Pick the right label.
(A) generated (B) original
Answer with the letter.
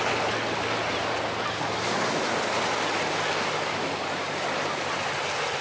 B